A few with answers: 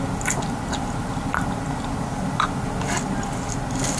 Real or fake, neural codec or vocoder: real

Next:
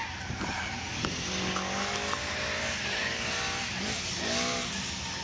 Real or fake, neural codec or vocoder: real